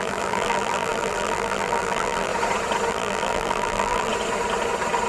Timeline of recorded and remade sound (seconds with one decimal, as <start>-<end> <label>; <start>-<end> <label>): 0.0-2.3 remade; 2.3-2.9 recorded; 2.9-4.1 remade; 4.1-5.1 recorded